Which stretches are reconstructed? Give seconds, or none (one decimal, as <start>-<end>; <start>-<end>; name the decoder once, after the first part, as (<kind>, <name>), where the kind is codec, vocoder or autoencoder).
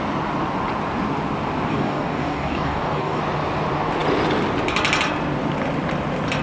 1.7-3.2 (codec, DAC)